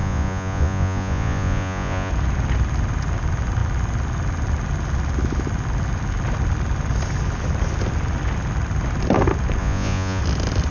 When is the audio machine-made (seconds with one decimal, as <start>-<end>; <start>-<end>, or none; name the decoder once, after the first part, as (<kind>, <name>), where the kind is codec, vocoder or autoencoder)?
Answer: 0.0-2.1 (vocoder, Vocos); 9.6-10.2